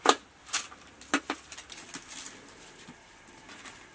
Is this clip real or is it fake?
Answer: real